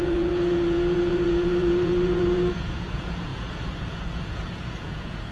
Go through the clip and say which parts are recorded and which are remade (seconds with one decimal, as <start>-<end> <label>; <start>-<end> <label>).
0.0-5.3 remade